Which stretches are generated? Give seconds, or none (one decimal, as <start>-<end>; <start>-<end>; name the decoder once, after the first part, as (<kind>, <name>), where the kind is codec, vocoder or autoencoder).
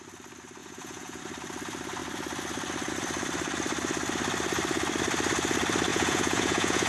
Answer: 0.6-1.2 (vocoder, Vocos); 5.9-6.9